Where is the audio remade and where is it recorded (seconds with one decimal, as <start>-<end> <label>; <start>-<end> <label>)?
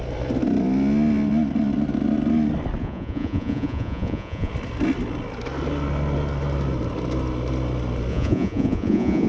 0.0-2.8 recorded; 2.8-4.5 remade; 4.5-8.1 recorded; 8.1-9.3 remade